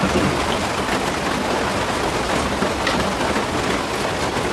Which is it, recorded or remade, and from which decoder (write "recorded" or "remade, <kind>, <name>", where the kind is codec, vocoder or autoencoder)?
recorded